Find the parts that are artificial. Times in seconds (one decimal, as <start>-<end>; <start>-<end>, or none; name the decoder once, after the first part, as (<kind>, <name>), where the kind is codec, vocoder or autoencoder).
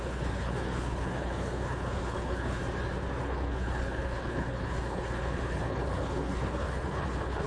0.0-2.6 (codec, HILCodec); 3.2-7.5